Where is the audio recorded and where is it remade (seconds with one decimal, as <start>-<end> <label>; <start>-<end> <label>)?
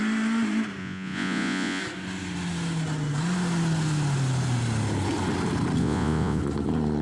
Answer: 0.0-0.8 recorded; 0.8-1.8 remade; 1.8-5.8 recorded; 5.8-6.4 remade; 6.4-7.0 recorded